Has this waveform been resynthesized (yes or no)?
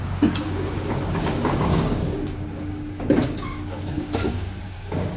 yes